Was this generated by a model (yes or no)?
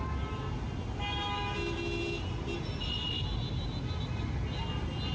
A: no